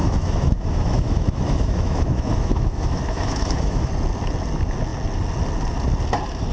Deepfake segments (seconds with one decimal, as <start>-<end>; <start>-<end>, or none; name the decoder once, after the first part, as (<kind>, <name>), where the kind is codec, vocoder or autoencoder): 0.0-3.9 (autoencoder, DAC-VAE)